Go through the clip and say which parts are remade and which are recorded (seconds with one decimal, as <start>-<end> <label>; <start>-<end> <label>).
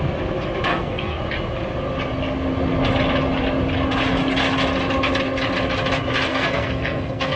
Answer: 0.0-0.7 recorded; 0.7-1.2 remade; 1.2-6.3 recorded; 6.3-7.4 remade